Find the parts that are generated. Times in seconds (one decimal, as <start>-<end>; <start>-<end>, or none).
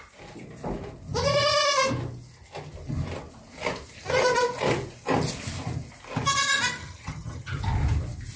6.8-7.6